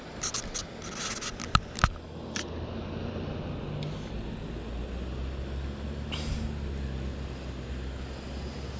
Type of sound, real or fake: real